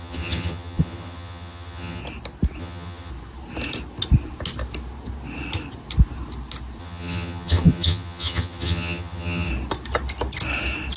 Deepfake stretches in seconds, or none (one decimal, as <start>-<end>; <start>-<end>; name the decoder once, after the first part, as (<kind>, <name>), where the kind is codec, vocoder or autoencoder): 0.0-2.0 (vocoder, HiFi-GAN); 2.6-3.1; 6.8-9.5